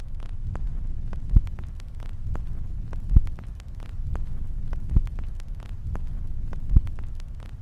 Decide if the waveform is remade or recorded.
remade